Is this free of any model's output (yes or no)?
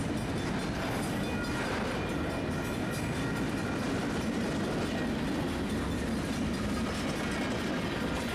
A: yes